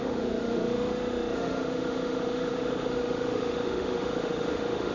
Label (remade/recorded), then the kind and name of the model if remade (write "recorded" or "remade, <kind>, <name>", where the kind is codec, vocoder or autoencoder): remade, autoencoder, DAC-VAE